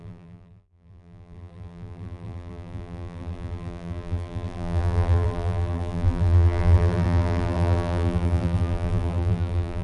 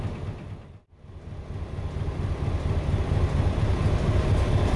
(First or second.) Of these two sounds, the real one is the second